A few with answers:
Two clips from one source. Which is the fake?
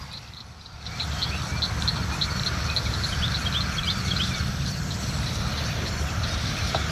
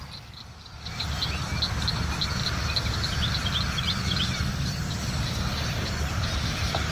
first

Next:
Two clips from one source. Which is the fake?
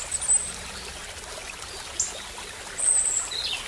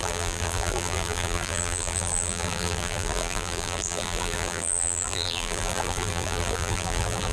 second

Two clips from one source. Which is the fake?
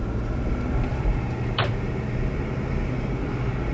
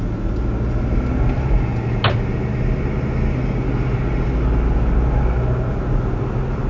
first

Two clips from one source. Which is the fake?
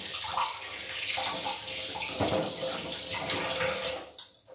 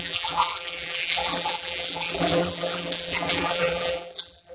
second